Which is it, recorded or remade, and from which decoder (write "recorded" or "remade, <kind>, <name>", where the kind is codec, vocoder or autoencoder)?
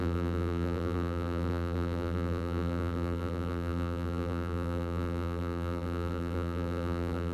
remade, vocoder, BigVGAN v2